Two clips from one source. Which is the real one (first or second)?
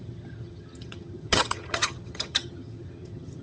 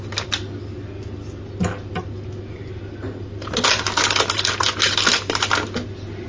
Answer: second